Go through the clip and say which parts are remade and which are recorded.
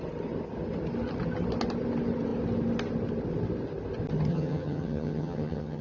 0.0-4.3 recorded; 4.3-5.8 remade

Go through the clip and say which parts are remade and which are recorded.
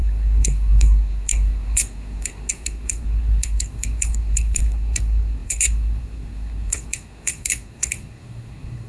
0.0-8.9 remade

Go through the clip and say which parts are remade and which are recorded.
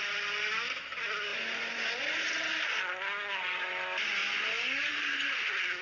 0.0-5.8 recorded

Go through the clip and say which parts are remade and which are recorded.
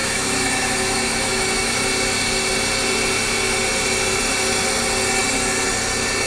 0.0-1.9 remade; 1.9-6.3 recorded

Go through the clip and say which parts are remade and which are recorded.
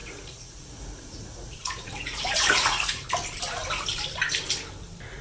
0.0-3.1 remade; 3.1-5.2 recorded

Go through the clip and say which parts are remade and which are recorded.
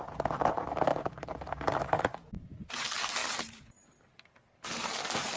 0.0-0.9 recorded; 0.9-1.4 remade; 1.4-3.2 recorded; 3.2-4.9 remade; 4.9-5.4 recorded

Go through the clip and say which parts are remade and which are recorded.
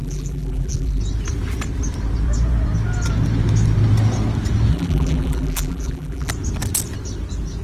0.0-1.0 remade; 1.0-4.7 recorded; 4.7-6.3 remade; 6.3-7.6 recorded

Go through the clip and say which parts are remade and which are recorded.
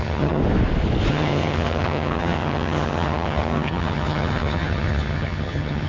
0.0-0.4 remade; 0.4-1.1 recorded; 1.1-5.9 remade